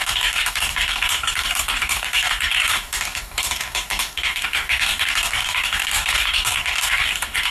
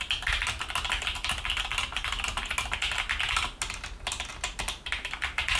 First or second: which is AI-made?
first